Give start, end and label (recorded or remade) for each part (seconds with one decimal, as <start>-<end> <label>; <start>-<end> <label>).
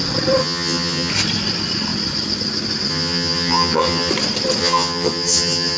0.0-0.4 recorded; 0.4-1.1 remade; 1.1-2.9 recorded; 2.9-4.1 remade; 4.1-4.6 recorded; 4.6-5.8 remade